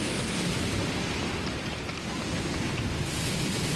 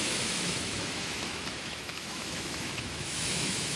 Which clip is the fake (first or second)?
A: second